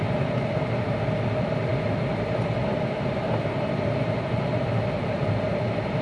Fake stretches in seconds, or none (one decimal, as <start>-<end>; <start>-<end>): 0.0-1.7; 5.3-6.0